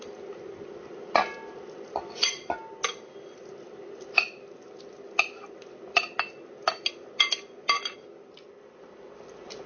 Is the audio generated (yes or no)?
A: no